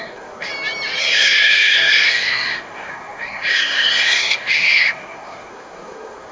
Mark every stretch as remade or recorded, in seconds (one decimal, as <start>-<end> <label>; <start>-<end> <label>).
0.0-0.5 remade; 0.5-1.0 recorded; 1.0-6.3 remade